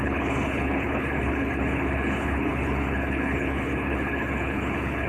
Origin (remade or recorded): remade